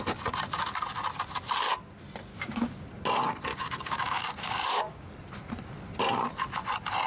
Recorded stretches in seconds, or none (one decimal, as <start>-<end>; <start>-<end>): 0.0-2.3; 2.9-3.5; 5.1-7.1